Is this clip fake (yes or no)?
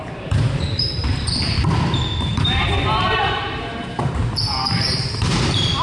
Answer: yes